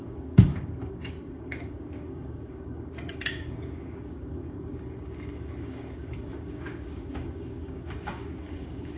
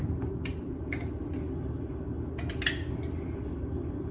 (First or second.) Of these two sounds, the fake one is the first